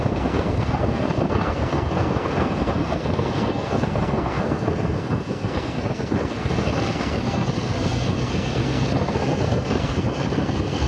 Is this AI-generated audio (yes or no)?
yes